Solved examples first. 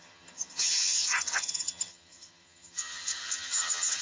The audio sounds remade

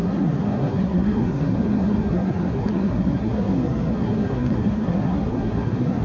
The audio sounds remade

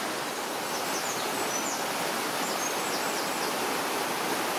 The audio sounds recorded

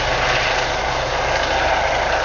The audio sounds recorded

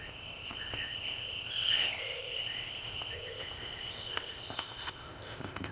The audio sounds remade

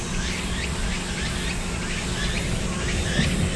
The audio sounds recorded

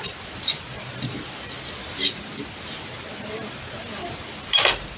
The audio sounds recorded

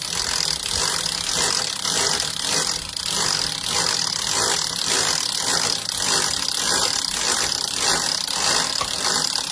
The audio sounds recorded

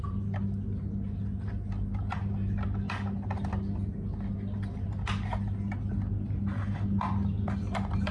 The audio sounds recorded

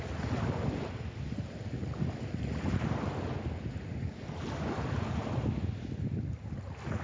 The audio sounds recorded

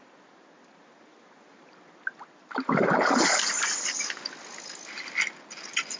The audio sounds recorded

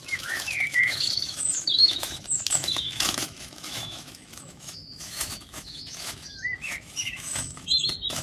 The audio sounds remade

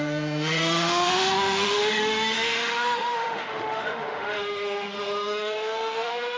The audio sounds remade